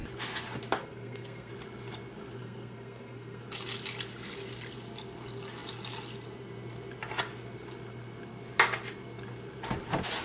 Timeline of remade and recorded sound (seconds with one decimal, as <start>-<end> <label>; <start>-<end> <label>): 0.0-0.8 recorded; 0.8-1.5 remade; 1.5-2.4 recorded; 2.4-3.4 remade; 3.4-10.2 recorded